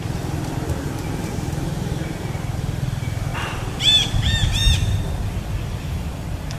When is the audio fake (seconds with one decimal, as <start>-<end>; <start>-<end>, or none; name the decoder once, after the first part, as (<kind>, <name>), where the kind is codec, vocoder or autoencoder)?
0.0-4.6 (vocoder, BigVGAN v2); 5.2-6.6